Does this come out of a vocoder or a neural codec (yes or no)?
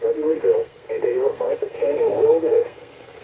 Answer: yes